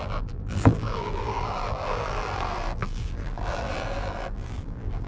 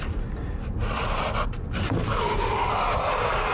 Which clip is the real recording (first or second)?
second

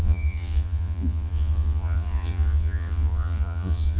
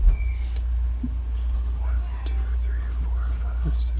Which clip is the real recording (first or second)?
second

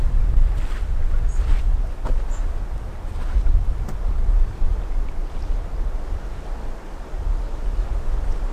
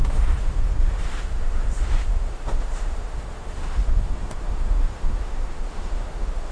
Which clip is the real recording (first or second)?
first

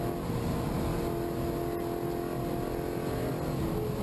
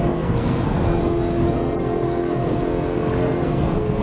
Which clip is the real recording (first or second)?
first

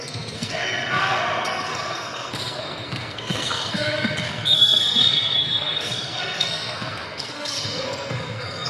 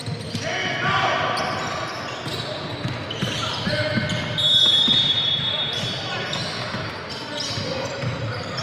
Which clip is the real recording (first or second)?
second